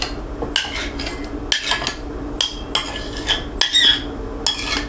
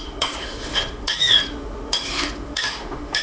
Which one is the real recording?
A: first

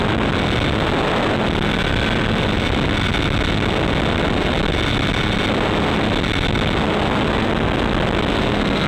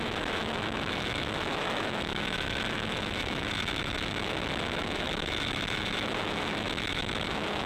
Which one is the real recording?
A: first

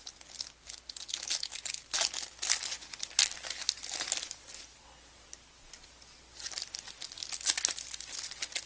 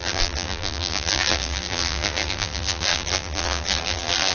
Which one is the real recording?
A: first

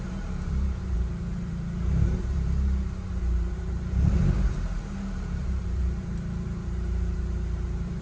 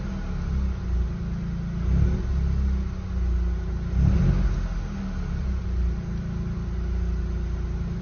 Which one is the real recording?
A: second